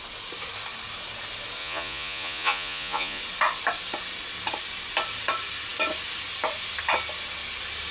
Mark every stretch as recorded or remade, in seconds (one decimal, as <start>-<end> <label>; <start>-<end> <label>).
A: 0.0-1.6 recorded; 1.6-3.2 remade; 3.2-7.9 recorded